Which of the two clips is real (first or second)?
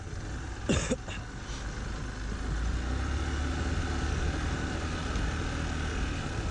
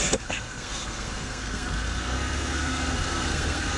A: first